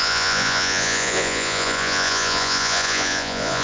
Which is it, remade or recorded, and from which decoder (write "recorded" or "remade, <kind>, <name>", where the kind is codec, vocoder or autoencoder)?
remade, vocoder, Vocos